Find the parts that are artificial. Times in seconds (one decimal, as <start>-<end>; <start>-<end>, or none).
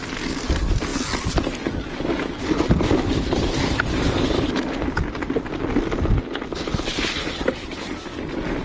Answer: none